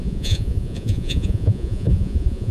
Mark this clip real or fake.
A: fake